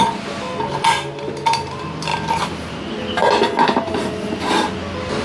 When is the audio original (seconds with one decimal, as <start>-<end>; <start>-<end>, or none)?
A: 0.0-5.2